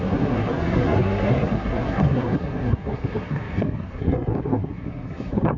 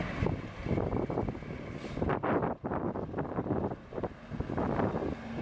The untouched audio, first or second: second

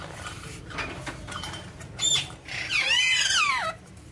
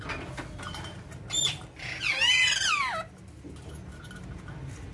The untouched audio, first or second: second